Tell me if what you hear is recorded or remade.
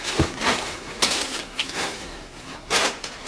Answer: remade